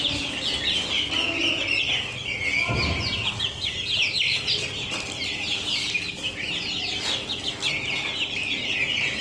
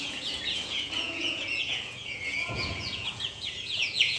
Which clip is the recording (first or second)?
first